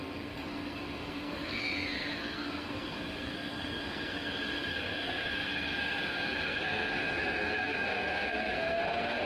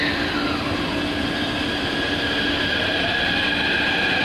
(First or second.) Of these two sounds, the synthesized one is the first